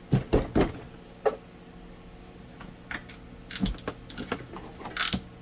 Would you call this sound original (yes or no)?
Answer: yes